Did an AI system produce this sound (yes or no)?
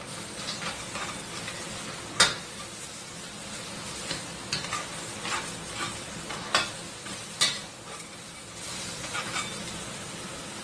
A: no